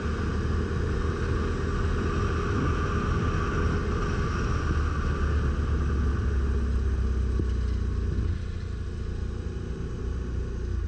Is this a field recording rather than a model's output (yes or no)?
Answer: yes